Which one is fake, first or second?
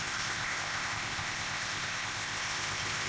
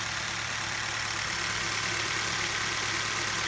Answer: first